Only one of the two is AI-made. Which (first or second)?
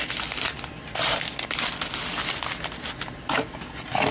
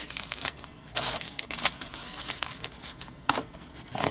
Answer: second